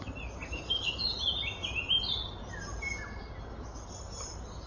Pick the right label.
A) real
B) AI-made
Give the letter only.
A